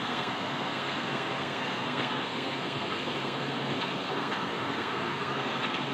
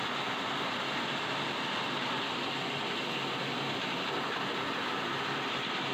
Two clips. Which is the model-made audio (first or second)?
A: first